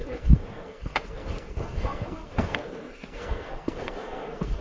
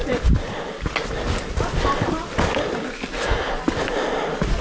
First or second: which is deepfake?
first